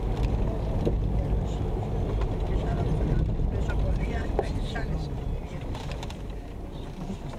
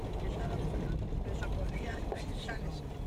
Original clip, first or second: first